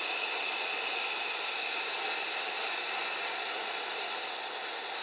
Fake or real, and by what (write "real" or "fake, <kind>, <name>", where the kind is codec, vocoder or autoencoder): real